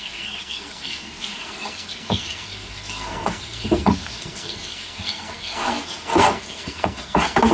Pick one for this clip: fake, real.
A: fake